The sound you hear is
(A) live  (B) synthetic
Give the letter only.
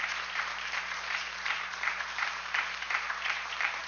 B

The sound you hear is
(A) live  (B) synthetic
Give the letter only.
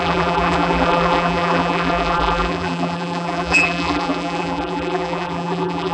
B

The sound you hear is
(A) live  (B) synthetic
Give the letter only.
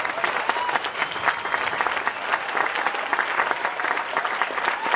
A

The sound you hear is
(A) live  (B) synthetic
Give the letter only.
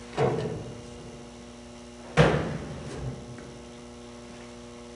A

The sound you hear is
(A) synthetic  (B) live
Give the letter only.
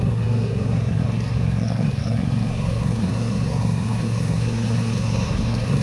A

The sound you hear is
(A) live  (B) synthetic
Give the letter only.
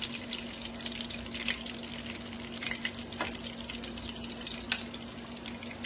A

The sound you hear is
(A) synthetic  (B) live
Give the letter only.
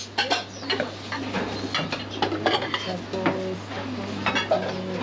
B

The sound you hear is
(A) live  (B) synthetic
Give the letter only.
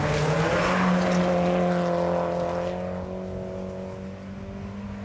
A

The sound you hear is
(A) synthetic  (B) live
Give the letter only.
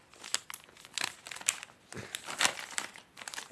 B